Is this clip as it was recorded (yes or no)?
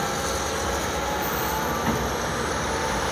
yes